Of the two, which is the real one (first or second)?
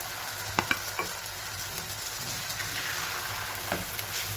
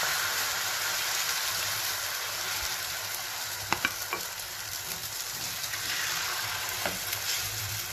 first